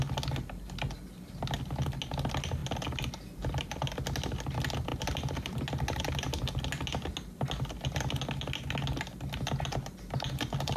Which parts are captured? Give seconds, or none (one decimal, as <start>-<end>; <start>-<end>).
0.0-10.8